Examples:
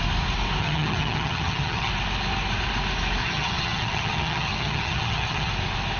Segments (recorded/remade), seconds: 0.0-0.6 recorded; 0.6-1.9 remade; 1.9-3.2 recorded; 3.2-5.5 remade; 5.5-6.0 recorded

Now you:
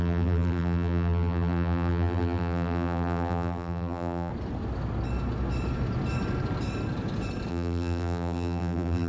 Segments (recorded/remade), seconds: 0.0-4.3 remade; 4.3-7.5 recorded; 7.5-9.1 remade

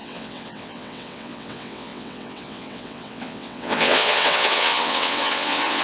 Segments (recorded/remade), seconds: 0.0-5.8 remade